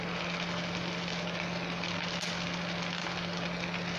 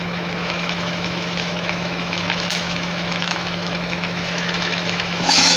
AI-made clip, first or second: second